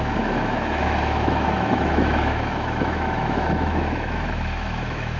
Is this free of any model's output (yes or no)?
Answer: no